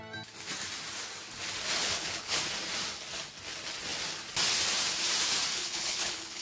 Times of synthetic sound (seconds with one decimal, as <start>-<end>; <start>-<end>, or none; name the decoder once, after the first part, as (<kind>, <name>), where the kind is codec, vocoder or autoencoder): 1.8-2.4 (codec, HILCodec); 5.5-6.4